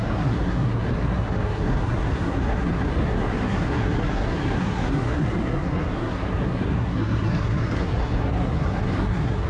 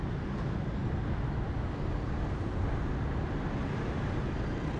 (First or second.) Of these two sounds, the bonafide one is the second